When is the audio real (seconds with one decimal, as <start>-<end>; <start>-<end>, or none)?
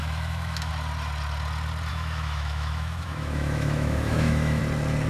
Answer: 0.7-1.9; 4.6-5.1